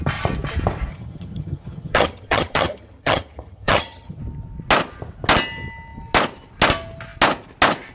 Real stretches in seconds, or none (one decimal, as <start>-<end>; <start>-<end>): 0.0-0.9; 4.2-7.9